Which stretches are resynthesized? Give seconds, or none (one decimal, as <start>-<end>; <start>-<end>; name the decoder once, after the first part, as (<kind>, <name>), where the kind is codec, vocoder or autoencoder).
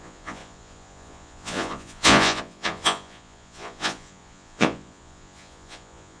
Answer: 0.0-6.2 (vocoder, Vocos)